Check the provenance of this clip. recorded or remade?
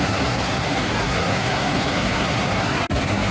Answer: remade